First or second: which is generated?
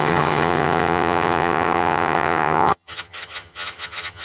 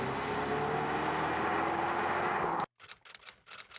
first